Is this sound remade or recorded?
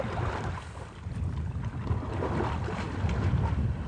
recorded